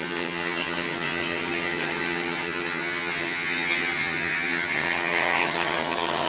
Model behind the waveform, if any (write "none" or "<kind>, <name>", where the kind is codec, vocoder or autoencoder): vocoder, HiFi-GAN